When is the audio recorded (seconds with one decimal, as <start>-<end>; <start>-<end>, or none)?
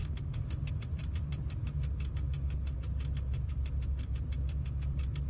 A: 0.0-0.7; 1.4-3.5